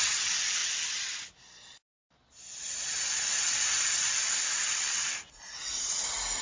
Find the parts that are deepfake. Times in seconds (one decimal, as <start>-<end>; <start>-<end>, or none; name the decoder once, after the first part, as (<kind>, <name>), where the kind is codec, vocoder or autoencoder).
none